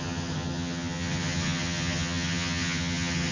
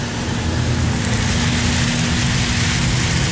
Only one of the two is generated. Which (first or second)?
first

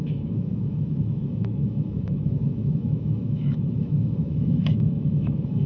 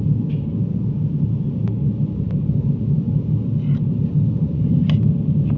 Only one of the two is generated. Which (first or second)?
first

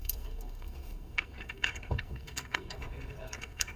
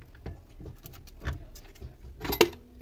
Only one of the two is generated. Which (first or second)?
first